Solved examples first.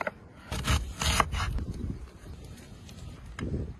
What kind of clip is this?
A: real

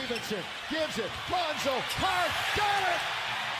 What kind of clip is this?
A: real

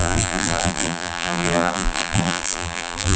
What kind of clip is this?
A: fake